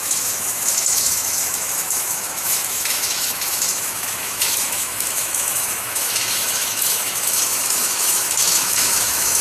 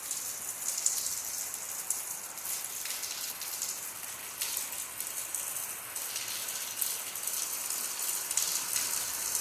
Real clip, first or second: second